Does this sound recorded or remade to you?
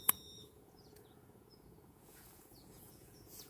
remade